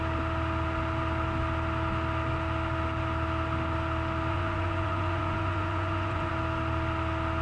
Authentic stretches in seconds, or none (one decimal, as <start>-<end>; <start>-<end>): 0.0-4.3; 6.3-7.4